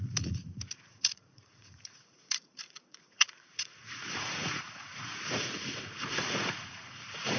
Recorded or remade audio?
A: remade